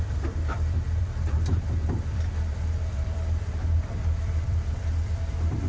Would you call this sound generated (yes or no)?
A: yes